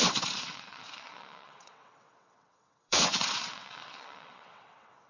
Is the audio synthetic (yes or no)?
yes